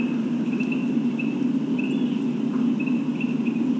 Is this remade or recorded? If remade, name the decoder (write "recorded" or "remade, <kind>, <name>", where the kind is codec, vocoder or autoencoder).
recorded